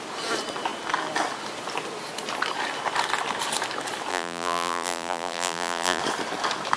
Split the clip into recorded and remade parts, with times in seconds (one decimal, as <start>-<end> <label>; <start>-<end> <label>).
0.0-4.1 recorded; 4.1-6.0 remade; 6.0-6.8 recorded